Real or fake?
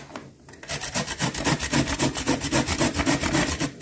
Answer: real